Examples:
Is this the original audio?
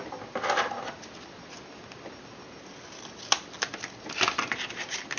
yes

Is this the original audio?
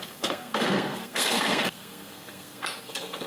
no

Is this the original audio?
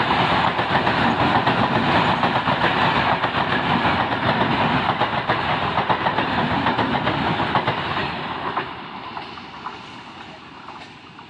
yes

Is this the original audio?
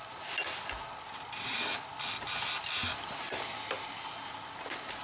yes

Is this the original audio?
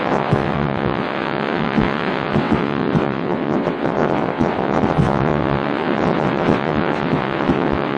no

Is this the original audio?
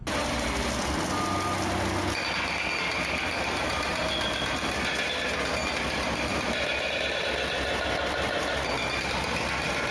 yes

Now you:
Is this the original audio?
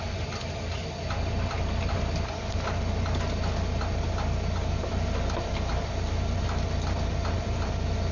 yes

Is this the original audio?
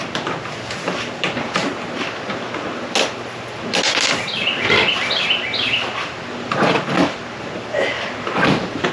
yes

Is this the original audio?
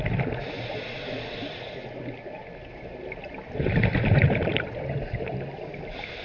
yes